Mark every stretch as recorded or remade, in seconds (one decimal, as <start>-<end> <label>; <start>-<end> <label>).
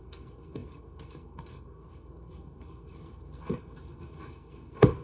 0.0-5.0 remade